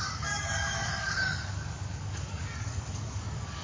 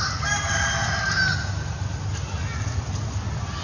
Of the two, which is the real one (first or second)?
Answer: second